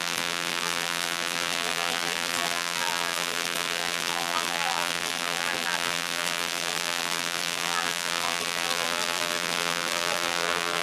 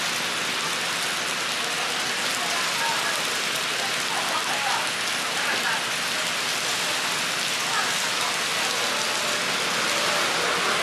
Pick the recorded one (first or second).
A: second